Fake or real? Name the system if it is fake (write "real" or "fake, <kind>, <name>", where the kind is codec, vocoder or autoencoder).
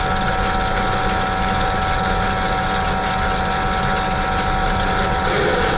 real